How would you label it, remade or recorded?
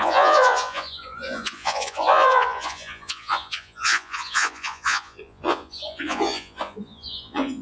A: remade